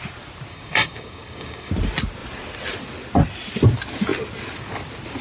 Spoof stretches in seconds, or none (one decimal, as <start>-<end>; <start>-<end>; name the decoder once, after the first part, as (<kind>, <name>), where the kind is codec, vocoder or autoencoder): 0.5-1.7 (codec, DAC)